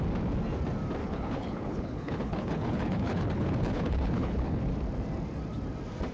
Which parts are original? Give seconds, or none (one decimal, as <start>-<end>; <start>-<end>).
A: 0.0-1.0; 4.7-6.1